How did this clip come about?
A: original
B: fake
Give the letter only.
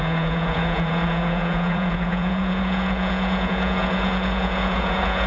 B